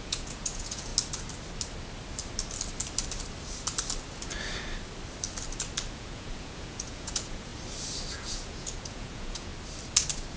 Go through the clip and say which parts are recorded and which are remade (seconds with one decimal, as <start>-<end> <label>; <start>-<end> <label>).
0.0-0.9 remade; 0.9-5.9 recorded; 5.9-7.5 remade; 7.5-8.1 recorded; 8.1-9.5 remade; 9.5-10.4 recorded